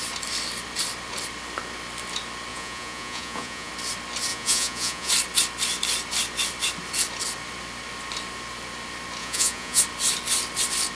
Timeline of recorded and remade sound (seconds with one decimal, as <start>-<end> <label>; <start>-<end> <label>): 0.0-2.5 recorded; 2.5-3.7 remade; 3.7-4.3 recorded; 4.3-5.1 remade; 5.1-9.2 recorded; 9.2-9.8 remade; 9.8-10.9 recorded